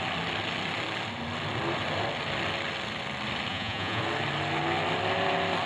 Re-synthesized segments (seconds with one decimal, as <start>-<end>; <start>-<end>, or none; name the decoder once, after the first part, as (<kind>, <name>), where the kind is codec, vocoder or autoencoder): 3.5-4.0 (vocoder, Vocos)